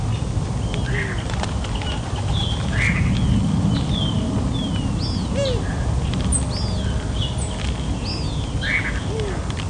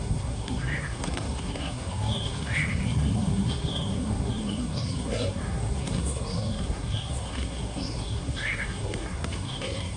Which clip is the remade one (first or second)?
second